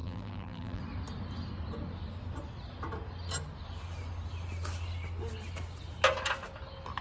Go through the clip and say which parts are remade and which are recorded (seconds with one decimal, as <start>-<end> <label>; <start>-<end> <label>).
0.0-0.8 remade; 0.8-7.0 recorded